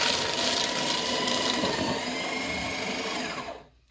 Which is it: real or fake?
real